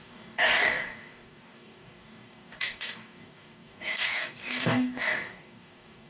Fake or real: fake